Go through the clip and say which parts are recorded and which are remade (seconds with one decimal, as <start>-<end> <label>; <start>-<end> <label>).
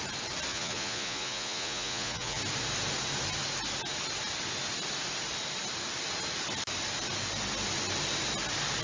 0.0-0.5 recorded; 0.5-2.4 remade; 2.4-8.8 recorded